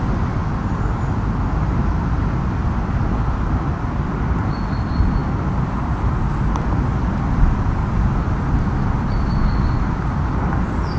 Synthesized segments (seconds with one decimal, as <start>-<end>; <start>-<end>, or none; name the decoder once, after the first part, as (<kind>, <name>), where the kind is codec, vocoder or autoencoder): none